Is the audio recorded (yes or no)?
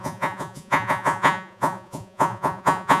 no